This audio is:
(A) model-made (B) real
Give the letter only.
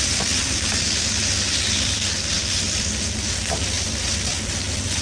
B